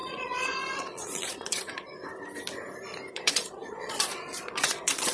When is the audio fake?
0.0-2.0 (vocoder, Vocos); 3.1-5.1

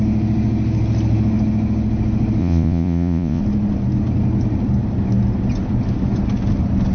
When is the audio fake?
2.4-3.4 (vocoder, Vocos)

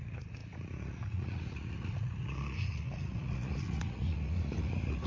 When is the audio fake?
0.0-5.1 (vocoder, Vocos)

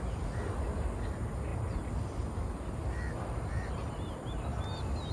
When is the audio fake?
none

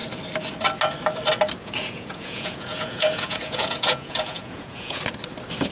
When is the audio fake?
1.6-5.0 (vocoder, Vocos)

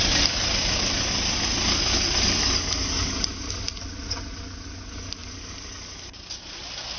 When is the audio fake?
none